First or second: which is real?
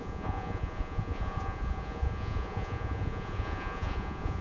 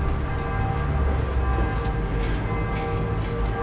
second